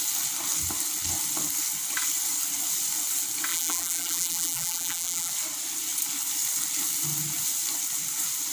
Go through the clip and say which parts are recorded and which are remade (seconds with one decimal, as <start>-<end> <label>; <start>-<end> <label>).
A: 0.0-3.5 recorded; 3.5-5.3 remade; 5.3-8.5 recorded